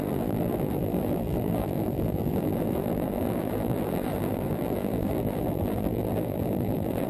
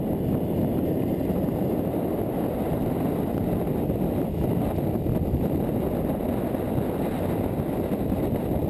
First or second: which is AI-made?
first